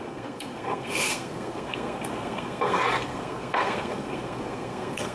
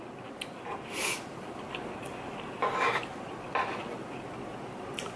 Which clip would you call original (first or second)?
second